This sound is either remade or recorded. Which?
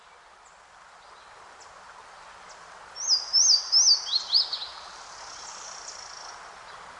recorded